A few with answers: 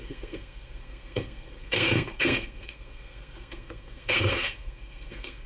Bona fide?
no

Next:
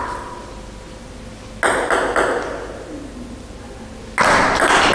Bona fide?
yes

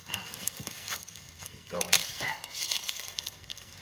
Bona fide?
no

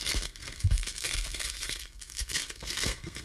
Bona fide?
no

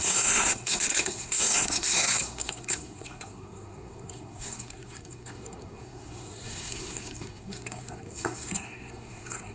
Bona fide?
no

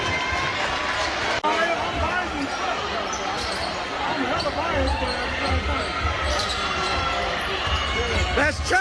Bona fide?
yes